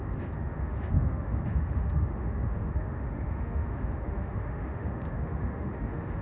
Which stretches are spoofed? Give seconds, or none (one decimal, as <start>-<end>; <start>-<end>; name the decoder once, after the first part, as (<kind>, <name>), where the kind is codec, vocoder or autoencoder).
0.0-6.2 (autoencoder, DAC-VAE)